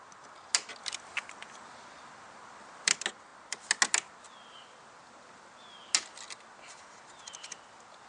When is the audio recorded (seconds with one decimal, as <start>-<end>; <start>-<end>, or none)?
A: 0.0-0.8; 2.9-8.1